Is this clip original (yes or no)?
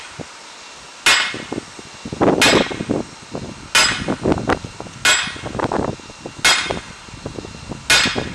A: yes